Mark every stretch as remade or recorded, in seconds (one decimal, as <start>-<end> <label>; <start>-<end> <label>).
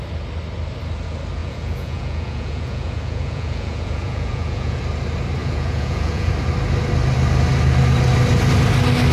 0.0-1.4 recorded; 1.4-4.8 remade; 4.8-5.4 recorded; 5.4-6.3 remade; 6.3-9.1 recorded